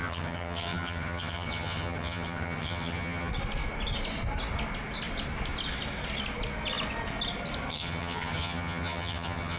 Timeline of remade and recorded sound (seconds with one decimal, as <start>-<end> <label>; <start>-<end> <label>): 0.0-3.3 remade; 3.3-7.7 recorded; 7.7-9.6 remade